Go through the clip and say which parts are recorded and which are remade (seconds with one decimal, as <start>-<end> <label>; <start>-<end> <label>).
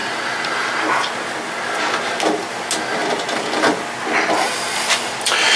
0.0-5.6 recorded